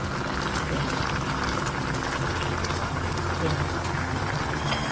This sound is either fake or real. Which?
real